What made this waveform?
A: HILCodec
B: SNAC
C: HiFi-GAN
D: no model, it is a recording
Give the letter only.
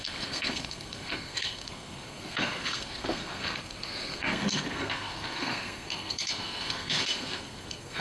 B